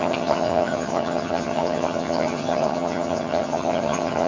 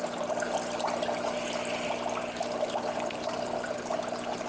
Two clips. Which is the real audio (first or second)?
second